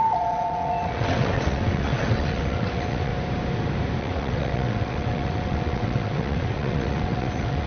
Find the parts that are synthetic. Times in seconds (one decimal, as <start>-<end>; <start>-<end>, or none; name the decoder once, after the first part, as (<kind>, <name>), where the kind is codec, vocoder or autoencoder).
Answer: 0.0-3.1 (vocoder, WaveNeXt); 4.0-7.7